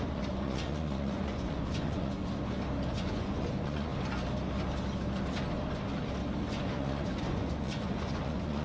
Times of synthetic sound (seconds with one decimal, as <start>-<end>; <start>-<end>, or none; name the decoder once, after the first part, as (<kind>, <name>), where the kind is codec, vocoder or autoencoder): 0.0-2.2 (vocoder, Vocos); 2.9-3.9; 6.5-8.6